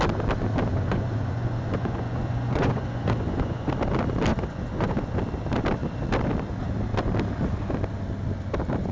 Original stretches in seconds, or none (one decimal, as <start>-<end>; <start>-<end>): 0.0-0.7; 3.7-4.3; 5.2-8.9